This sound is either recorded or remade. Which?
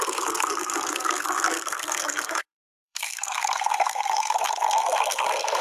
remade